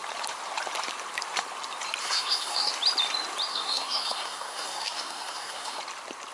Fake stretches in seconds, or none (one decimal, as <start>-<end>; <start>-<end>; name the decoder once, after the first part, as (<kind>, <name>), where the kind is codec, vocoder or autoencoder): 2.0-2.7 (codec, SNAC); 3.5-5.8